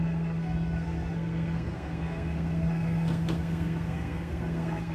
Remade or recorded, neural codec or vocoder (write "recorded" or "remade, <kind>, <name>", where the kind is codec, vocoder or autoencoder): remade, codec, SNAC